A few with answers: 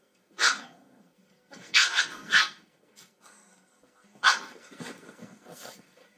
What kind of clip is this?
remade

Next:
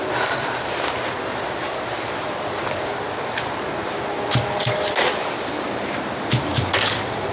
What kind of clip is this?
recorded